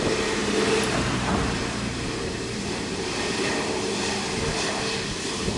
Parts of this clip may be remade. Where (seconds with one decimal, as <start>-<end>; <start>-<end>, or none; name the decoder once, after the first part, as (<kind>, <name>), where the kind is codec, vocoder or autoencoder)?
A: 0.4-3.5 (vocoder, BigVGAN v2)